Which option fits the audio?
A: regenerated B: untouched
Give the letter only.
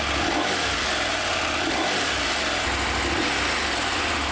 B